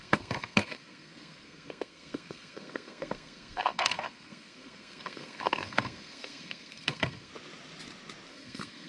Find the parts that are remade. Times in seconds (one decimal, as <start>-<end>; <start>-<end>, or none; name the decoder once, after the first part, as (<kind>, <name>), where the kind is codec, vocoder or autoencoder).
0.0-7.3 (codec, SNAC); 8.3-8.9